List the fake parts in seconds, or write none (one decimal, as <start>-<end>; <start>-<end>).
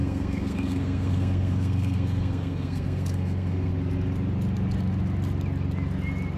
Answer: 0.0-3.7